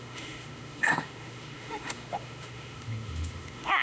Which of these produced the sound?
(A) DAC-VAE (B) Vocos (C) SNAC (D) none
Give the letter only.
A